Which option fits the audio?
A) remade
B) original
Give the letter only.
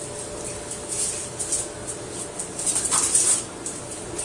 B